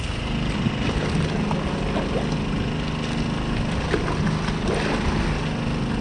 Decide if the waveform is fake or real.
real